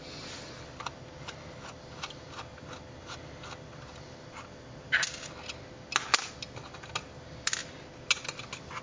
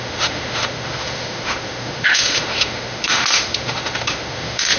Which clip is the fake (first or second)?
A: second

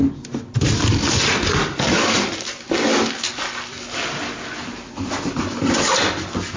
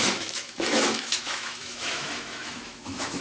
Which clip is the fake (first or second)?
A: second